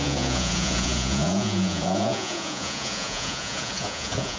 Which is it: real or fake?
fake